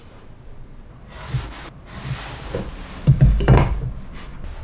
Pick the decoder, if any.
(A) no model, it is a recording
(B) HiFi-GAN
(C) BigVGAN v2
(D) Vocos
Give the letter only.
A